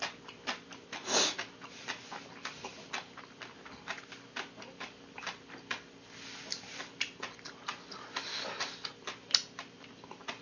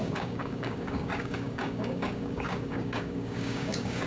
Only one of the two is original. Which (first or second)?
first